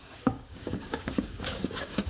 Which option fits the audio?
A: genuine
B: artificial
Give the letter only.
B